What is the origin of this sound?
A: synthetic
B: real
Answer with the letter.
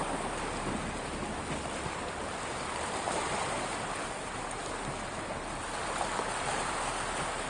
B